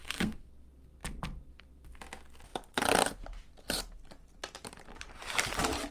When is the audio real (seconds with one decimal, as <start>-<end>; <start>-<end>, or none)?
0.5-5.9